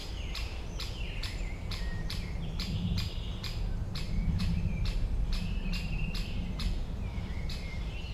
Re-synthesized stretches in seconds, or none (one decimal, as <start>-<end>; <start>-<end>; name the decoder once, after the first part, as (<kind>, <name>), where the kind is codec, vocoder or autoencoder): 0.0-8.1 (vocoder, BigVGAN v2)